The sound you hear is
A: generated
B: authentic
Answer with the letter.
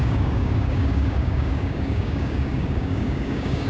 A